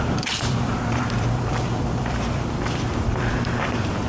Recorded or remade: remade